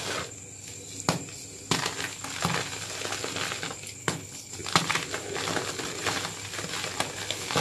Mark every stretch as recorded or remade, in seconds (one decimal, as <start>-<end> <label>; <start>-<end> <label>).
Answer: 0.0-4.0 recorded; 4.0-4.5 remade; 4.5-7.6 recorded